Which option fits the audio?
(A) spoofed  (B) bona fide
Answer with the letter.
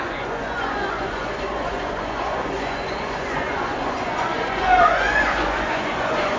A